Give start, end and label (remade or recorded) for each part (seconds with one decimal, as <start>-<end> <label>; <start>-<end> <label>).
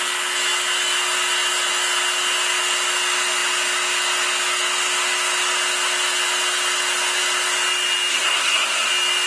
0.0-8.1 recorded; 8.1-8.9 remade; 8.9-9.3 recorded